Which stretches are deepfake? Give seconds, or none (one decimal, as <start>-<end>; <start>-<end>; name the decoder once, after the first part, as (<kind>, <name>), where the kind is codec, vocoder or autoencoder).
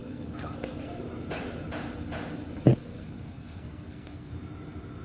0.0-1.0 (codec, SNAC); 2.7-4.3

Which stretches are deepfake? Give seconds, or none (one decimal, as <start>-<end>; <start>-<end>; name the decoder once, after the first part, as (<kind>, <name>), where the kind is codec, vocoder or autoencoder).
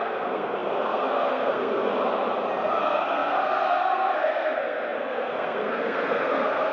0.0-1.9 (codec, SNAC); 2.8-6.7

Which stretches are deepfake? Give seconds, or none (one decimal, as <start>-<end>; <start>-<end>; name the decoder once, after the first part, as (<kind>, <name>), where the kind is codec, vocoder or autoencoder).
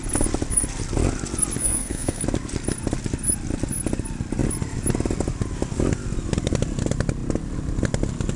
1.6-2.2 (codec, SNAC)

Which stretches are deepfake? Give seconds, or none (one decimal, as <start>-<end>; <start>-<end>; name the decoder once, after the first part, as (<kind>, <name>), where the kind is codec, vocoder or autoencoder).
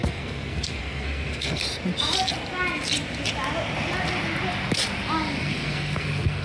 0.0-1.6 (codec, SNAC); 5.4-6.4